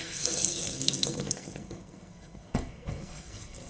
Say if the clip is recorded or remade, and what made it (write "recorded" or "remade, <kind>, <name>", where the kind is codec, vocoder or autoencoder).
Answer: remade, codec, SNAC